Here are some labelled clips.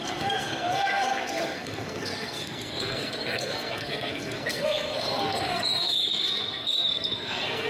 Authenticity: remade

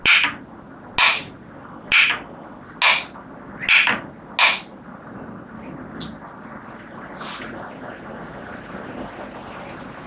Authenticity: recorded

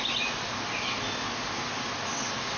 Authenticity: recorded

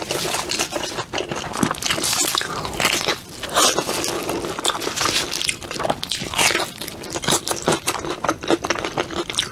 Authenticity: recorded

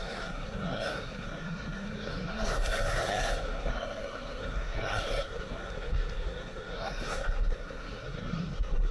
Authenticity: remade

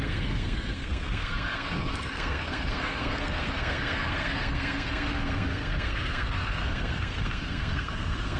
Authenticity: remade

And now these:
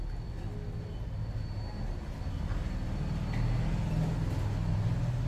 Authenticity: recorded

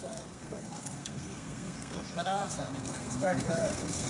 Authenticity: remade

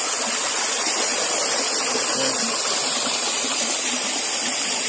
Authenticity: recorded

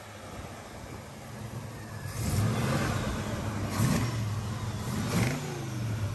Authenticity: recorded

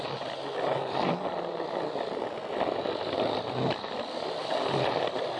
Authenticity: recorded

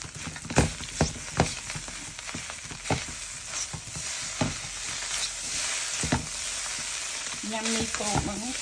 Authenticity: recorded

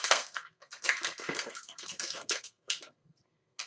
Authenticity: remade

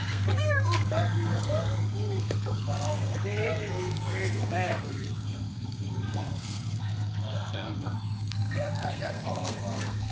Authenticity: remade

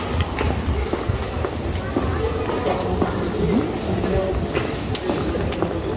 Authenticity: recorded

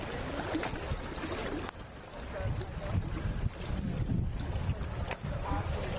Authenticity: recorded